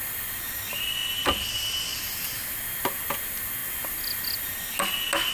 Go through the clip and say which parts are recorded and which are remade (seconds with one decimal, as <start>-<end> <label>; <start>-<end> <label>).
0.0-5.3 recorded